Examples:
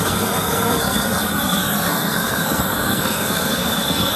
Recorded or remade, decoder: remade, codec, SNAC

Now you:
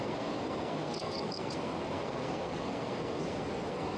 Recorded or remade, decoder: remade, codec, SNAC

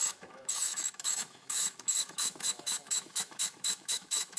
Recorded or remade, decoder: remade, autoencoder, DAC-VAE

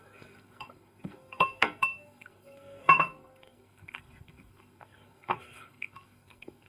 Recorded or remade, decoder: remade, codec, SNAC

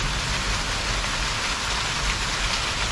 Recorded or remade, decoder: recorded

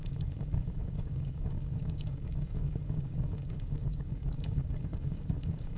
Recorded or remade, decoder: remade, codec, DAC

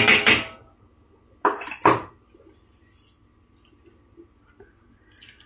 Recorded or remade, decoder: recorded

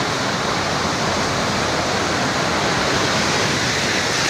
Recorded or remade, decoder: recorded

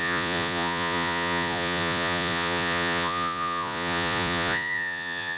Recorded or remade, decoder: remade, vocoder, Vocos